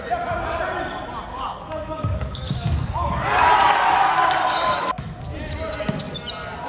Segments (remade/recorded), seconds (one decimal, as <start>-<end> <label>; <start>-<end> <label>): 0.0-1.3 recorded; 1.3-3.5 remade; 3.5-4.4 recorded; 4.4-5.0 remade; 5.0-6.7 recorded